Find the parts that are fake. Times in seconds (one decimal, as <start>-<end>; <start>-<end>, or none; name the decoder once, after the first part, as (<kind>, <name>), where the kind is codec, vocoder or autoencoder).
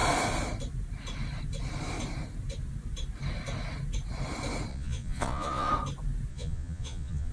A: 4.7-5.7 (vocoder, Vocos); 6.3-7.3